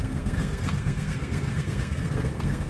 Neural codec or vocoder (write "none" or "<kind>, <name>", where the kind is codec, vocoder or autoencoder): codec, SNAC